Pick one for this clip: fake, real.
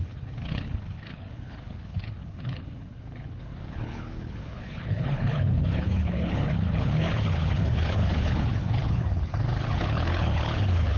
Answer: fake